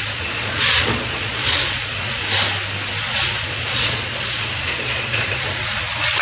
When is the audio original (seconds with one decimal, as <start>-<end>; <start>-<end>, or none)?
2.2-3.0